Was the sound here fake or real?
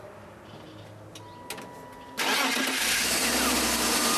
real